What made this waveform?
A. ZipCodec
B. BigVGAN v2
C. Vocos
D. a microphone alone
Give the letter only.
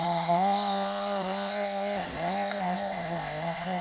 A